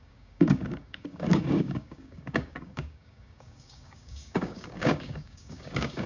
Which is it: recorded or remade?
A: remade